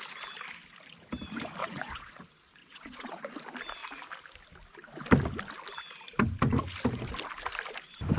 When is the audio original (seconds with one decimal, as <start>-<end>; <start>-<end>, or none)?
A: 0.0-1.6; 2.2-2.6; 3.2-8.2